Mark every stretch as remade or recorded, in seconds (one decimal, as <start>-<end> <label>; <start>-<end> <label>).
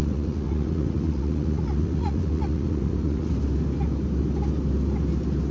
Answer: 0.0-3.3 remade; 3.3-5.5 recorded